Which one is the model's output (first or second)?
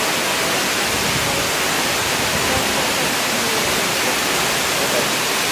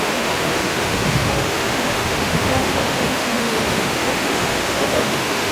second